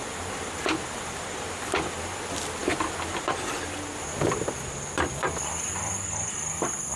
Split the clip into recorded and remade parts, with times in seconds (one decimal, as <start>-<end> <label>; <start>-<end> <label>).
0.0-7.0 recorded